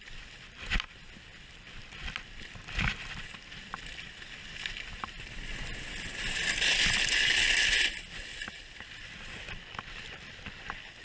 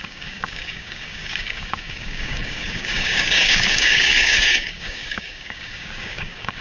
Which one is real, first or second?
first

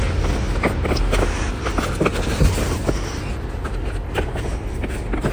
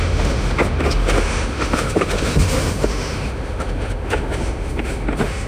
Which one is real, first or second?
first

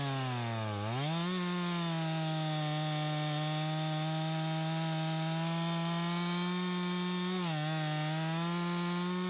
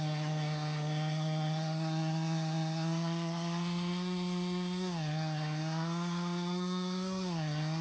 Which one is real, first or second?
first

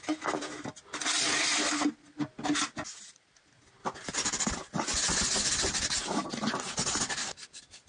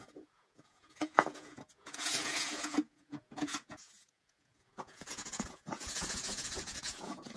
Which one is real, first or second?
first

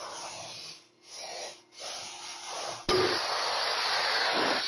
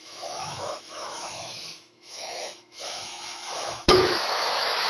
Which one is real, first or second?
first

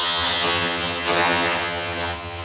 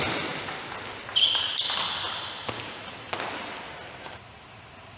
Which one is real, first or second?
second